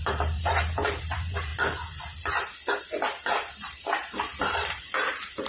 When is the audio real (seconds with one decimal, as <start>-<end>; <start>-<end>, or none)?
1.5-2.8